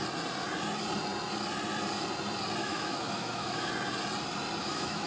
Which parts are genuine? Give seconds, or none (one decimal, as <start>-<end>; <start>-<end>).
0.0-2.6; 3.7-4.6